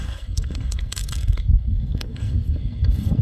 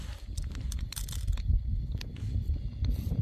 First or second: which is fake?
first